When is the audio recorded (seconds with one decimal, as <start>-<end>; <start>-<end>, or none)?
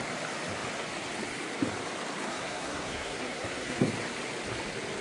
0.0-2.2; 3.9-5.0